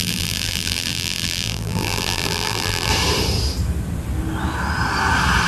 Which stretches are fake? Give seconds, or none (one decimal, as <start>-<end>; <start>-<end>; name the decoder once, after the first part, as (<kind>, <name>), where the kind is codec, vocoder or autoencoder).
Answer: 0.0-2.9 (vocoder, BigVGAN v2)